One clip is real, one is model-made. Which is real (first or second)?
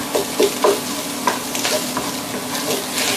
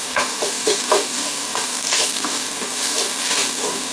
first